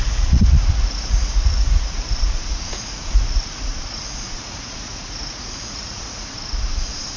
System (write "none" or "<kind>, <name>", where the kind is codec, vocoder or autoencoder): vocoder, Vocos